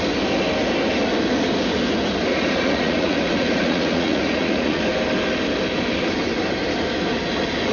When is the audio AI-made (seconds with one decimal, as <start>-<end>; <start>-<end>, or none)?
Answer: 2.3-4.8